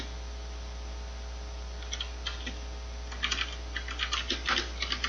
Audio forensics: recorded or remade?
recorded